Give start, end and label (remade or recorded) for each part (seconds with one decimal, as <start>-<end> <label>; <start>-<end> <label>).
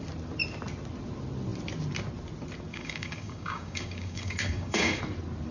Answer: 0.0-2.7 recorded; 2.7-5.0 remade; 5.0-5.5 recorded